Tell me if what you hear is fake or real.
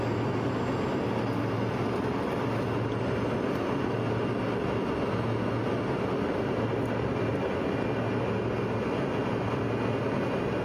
real